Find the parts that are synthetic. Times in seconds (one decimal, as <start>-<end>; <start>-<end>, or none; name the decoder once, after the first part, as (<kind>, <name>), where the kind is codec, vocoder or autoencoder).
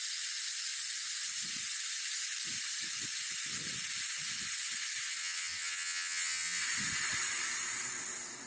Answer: 5.2-6.6 (vocoder, HiFi-GAN)